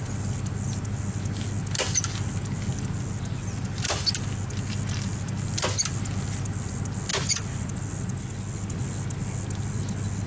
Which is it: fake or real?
real